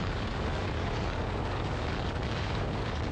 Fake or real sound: fake